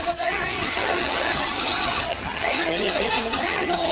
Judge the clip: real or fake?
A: fake